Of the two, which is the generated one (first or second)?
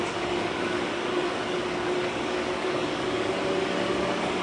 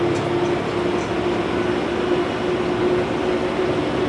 first